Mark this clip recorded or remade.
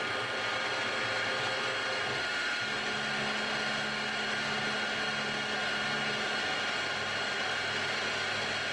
recorded